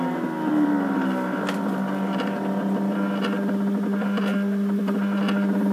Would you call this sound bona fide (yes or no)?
yes